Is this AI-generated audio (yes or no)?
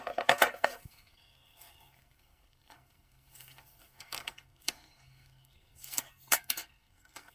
yes